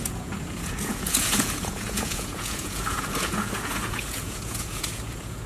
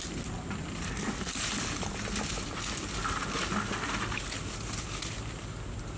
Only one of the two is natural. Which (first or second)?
second